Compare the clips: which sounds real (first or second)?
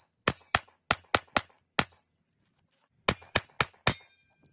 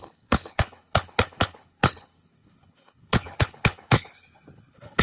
first